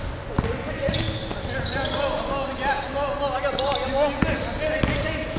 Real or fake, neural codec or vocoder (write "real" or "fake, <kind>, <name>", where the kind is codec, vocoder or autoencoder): real